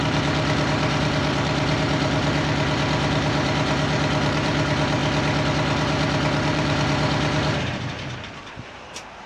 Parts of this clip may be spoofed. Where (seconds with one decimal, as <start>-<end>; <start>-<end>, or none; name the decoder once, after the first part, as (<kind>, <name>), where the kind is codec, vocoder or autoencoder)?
0.0-5.0 (vocoder, BigVGAN v2); 5.5-9.3